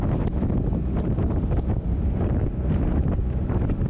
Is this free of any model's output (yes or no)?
yes